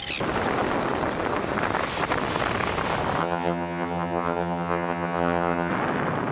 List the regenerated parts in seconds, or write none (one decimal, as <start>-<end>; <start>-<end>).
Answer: 3.2-5.7